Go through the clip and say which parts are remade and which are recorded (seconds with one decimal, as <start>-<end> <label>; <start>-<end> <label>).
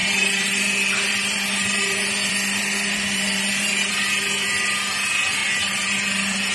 0.0-3.9 remade; 3.9-5.4 recorded; 5.4-6.5 remade